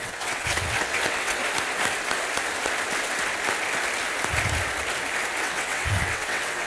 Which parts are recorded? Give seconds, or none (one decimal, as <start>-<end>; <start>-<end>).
1.4-5.4